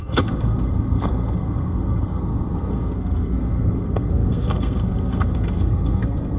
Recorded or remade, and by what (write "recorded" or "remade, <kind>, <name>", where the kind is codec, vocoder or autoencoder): remade, codec, SNAC